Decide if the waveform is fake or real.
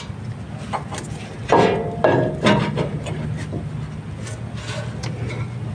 real